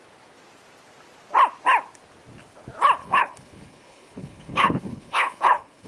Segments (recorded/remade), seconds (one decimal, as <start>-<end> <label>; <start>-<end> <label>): 0.0-3.0 recorded; 3.0-5.9 remade